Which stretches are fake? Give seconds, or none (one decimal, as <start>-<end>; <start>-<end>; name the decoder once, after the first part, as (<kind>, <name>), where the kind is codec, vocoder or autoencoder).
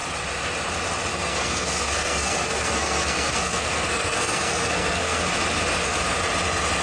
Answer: 1.1-5.2 (codec, SNAC)